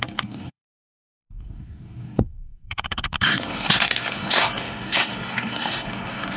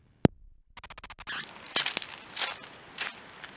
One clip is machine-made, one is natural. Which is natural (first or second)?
second